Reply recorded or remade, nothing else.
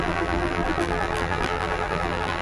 remade